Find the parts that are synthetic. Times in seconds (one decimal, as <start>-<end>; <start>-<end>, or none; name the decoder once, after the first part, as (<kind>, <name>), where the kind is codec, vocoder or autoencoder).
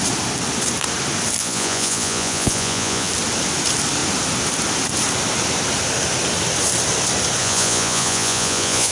1.4-3.1 (vocoder, Vocos); 7.4-8.9